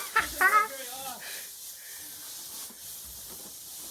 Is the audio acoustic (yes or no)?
yes